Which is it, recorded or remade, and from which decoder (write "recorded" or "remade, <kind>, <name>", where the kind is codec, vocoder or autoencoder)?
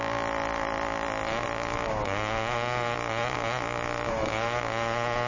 remade, autoencoder, DAC-VAE